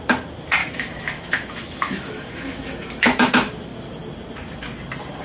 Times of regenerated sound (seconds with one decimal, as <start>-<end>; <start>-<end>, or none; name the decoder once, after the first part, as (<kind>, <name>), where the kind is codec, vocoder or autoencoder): 0.6-3.3 (autoencoder, DAC-VAE)